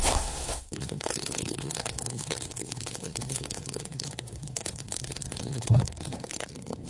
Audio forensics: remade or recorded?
remade